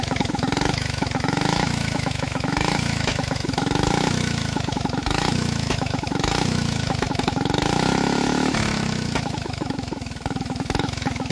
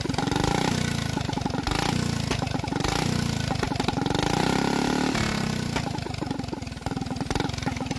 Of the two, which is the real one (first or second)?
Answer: second